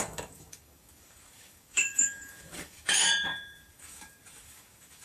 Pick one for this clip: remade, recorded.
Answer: remade